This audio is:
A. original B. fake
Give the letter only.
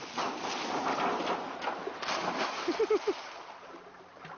A